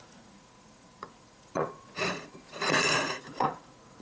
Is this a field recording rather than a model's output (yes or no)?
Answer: no